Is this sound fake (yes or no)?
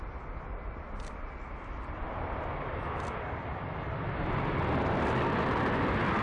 no